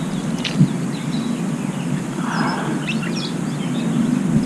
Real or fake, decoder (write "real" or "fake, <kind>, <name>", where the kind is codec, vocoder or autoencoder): real